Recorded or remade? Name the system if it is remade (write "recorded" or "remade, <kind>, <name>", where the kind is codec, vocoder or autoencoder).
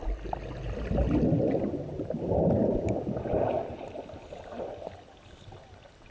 recorded